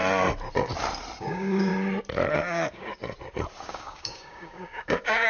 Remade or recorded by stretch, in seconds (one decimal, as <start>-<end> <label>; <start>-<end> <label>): 0.0-1.2 recorded; 1.2-1.7 remade; 1.7-2.3 recorded; 2.3-3.0 remade; 3.0-3.6 recorded; 3.6-5.3 remade